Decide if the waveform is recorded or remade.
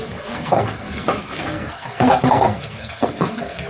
remade